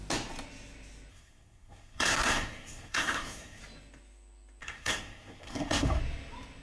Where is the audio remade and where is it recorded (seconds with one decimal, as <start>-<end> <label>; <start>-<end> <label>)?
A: 0.0-1.1 recorded; 1.1-3.6 remade; 3.6-4.6 recorded; 4.6-6.0 remade; 6.0-6.6 recorded